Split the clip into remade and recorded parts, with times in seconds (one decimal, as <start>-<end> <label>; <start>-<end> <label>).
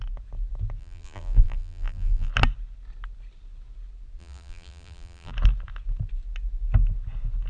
0.0-0.8 recorded; 0.8-2.3 remade; 2.3-4.2 recorded; 4.2-5.3 remade; 5.3-7.5 recorded